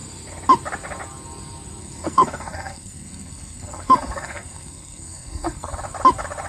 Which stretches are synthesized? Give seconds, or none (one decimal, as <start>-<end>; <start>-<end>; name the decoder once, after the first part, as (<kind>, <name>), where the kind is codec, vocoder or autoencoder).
1.8-5.7 (codec, SNAC)